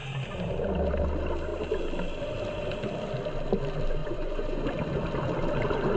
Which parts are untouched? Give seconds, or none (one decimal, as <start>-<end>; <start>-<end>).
0.0-4.0; 4.7-6.0